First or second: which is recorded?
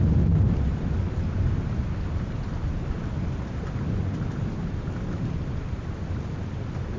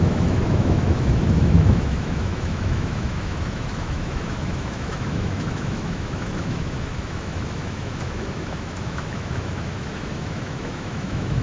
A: first